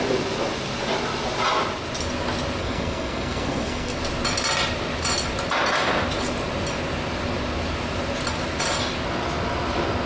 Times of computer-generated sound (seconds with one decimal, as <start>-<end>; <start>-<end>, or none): 2.6-4.0